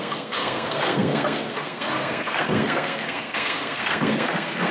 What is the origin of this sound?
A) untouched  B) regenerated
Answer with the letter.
B